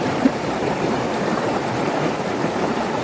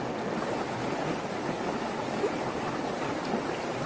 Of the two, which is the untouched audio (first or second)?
second